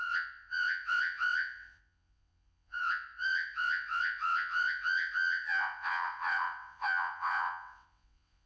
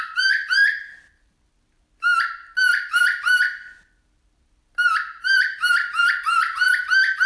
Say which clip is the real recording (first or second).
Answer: second